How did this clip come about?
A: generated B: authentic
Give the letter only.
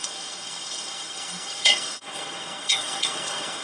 A